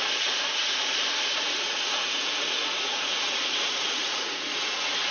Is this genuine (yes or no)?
no